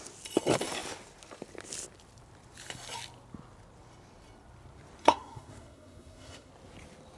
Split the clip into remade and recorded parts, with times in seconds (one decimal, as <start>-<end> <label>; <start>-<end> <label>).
0.0-5.0 recorded; 5.0-6.5 remade; 6.5-7.2 recorded